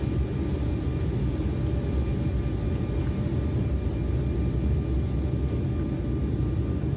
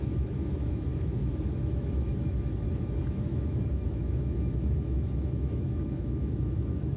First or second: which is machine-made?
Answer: second